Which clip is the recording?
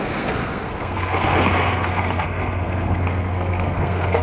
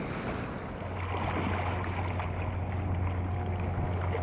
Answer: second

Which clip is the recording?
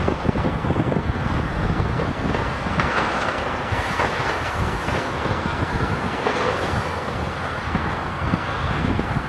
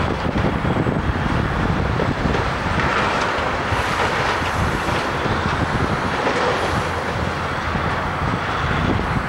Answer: second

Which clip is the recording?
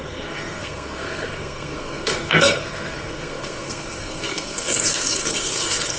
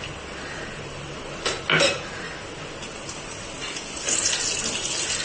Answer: second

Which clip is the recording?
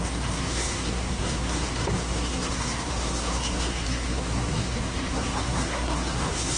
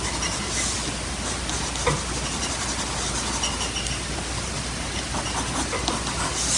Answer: second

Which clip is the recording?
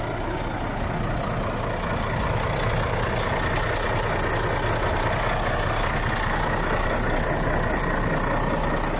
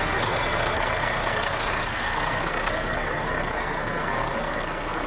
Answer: first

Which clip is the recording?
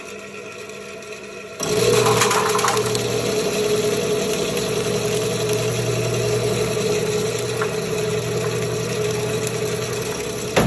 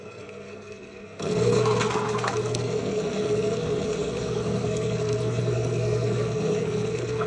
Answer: first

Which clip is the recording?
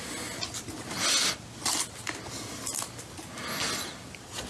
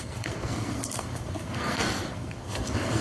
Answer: first